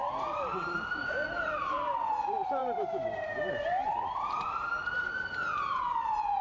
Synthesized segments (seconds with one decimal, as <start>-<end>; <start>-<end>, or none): 2.6-4.2